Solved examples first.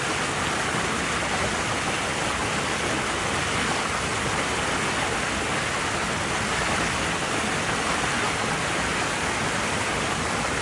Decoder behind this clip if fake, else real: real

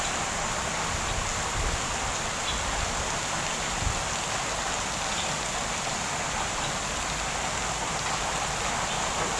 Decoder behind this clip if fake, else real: real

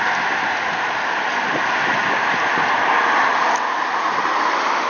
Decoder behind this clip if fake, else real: real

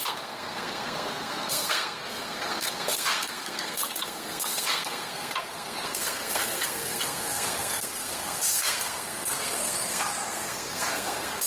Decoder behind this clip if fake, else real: fake, codec, SNAC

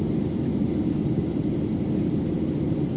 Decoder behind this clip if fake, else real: real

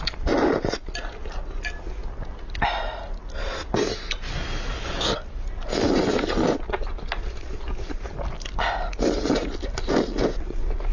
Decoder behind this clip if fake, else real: real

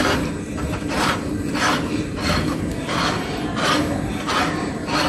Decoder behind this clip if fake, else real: real